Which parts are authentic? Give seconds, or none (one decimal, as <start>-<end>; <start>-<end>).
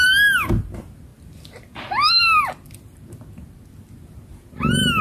0.0-5.0